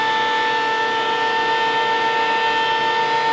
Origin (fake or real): real